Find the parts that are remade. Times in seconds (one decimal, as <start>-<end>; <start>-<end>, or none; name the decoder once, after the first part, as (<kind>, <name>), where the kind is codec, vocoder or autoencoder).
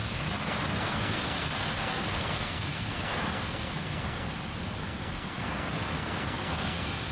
0.0-4.3 (codec, SNAC); 4.8-7.1